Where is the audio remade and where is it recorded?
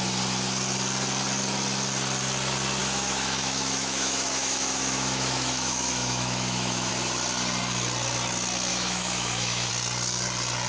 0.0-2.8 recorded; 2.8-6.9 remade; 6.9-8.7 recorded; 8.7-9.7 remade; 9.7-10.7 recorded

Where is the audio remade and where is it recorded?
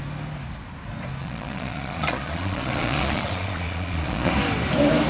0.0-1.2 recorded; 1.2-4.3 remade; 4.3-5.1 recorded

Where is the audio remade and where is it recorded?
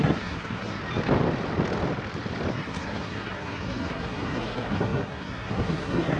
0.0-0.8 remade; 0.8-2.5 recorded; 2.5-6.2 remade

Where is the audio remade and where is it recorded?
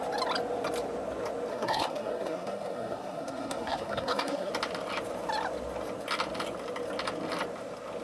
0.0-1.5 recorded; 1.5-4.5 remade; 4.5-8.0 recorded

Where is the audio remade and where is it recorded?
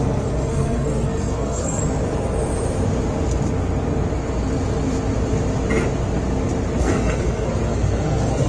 0.0-1.8 remade; 1.8-6.8 recorded; 6.8-8.5 remade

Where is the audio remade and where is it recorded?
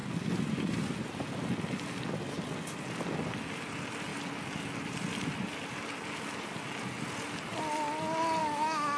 0.0-8.4 recorded; 8.4-9.0 remade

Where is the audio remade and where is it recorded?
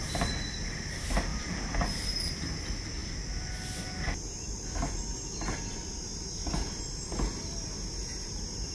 0.0-1.3 recorded; 1.3-2.3 remade; 2.3-8.7 recorded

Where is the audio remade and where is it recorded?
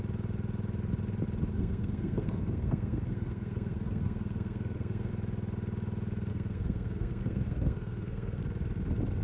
0.0-1.5 recorded; 1.5-5.1 remade; 5.1-6.3 recorded; 6.3-8.4 remade; 8.4-9.2 recorded